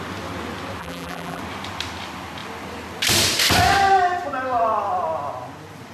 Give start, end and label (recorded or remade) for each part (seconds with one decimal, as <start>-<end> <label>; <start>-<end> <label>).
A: 0.0-0.8 recorded; 0.8-1.4 remade; 1.4-5.9 recorded

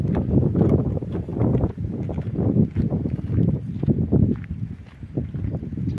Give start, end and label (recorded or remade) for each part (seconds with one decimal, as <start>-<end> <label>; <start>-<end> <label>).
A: 0.0-6.0 recorded

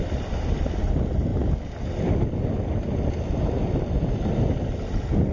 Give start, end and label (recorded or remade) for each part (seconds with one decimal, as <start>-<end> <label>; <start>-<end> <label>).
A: 0.0-5.3 recorded

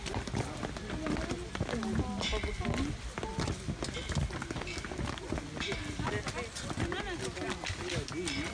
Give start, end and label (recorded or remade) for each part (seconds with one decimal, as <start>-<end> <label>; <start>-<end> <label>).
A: 0.0-8.5 recorded

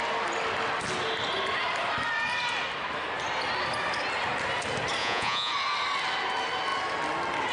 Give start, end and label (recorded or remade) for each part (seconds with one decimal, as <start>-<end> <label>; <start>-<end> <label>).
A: 0.0-5.0 recorded; 5.0-5.5 remade; 5.5-7.5 recorded

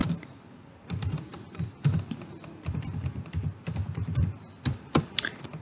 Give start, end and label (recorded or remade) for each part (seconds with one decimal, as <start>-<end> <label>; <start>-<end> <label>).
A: 0.0-0.7 recorded; 0.7-5.6 remade